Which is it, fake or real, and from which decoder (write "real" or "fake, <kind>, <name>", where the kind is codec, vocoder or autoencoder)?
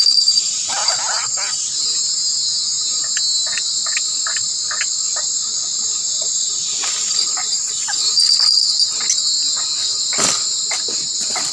real